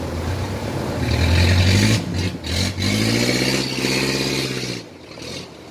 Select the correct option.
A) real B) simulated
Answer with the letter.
A